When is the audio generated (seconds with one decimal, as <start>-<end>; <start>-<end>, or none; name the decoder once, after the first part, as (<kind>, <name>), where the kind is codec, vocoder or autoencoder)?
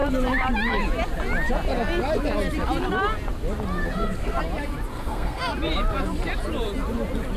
3.8-4.4 (codec, SNAC); 4.9-5.4